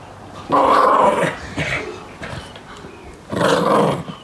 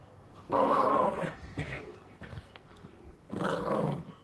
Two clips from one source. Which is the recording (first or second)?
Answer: first